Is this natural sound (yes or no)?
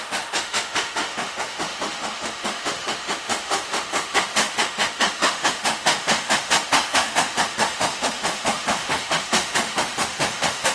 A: no